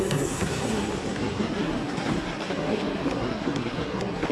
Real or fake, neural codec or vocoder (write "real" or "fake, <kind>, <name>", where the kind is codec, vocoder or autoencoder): fake, codec, SNAC